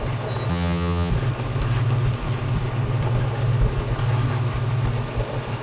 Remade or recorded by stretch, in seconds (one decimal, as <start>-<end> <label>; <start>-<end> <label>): 0.0-0.5 recorded; 0.5-1.1 remade; 1.1-5.6 recorded